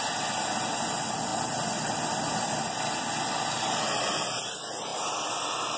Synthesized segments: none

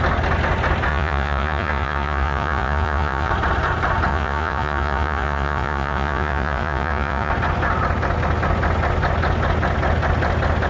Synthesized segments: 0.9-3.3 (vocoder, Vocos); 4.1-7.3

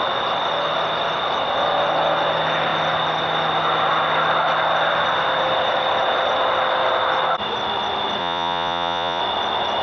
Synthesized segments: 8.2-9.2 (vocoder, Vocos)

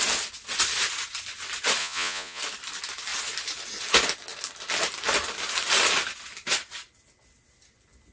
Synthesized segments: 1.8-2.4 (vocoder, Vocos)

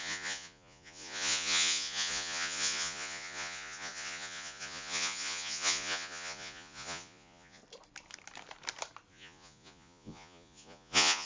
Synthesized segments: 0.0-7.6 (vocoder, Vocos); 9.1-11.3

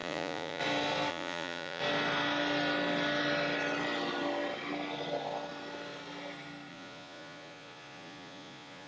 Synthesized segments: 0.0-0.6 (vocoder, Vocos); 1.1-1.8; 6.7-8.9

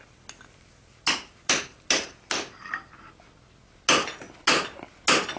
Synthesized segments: none